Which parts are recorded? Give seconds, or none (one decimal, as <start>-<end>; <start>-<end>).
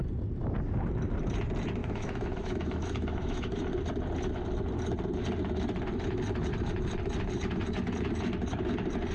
0.0-1.8; 3.6-9.1